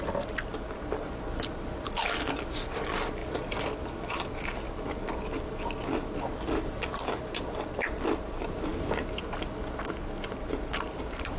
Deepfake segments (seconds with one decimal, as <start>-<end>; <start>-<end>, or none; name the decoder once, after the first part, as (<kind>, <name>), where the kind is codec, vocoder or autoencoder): none